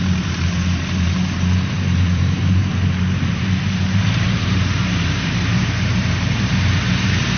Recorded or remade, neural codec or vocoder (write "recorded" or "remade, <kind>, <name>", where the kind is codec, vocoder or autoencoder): remade, vocoder, BigVGAN v2